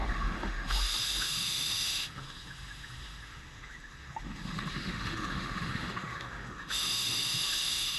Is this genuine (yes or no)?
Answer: no